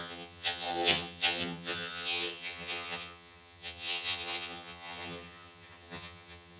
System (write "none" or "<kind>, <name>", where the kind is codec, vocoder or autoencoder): vocoder, HiFi-GAN